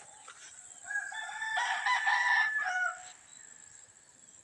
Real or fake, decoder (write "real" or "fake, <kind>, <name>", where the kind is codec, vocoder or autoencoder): real